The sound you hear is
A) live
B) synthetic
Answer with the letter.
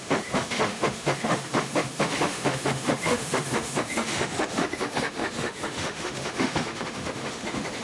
B